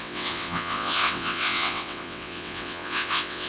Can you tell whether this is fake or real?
fake